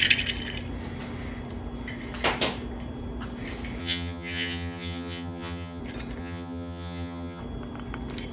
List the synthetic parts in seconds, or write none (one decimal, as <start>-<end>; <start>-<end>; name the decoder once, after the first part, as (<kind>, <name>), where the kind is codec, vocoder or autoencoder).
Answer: 3.8-5.8 (vocoder, HiFi-GAN); 6.2-7.4